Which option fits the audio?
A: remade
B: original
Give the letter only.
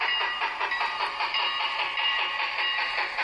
A